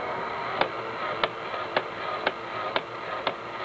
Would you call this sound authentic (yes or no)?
yes